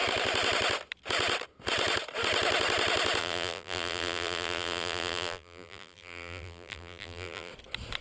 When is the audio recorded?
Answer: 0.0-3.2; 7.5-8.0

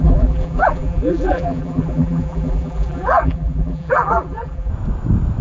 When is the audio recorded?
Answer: 4.7-5.4